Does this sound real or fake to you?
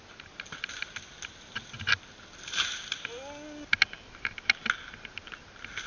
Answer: real